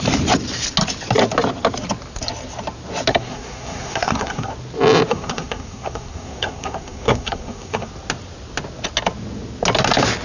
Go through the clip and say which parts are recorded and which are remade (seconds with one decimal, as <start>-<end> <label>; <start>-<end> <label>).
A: 0.0-3.1 recorded; 3.1-4.5 remade; 4.5-5.1 recorded; 5.1-7.9 remade; 7.9-10.2 recorded